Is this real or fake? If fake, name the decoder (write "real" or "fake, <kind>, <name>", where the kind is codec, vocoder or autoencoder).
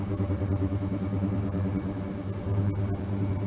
fake, vocoder, BigVGAN v2